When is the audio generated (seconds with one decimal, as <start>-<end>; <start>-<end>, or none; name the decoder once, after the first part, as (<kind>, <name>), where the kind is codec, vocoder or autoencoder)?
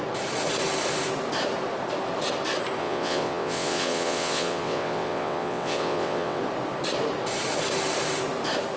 2.8-6.4 (vocoder, WaveNeXt)